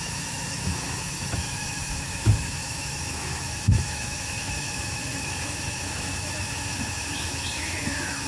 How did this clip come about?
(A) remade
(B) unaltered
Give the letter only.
A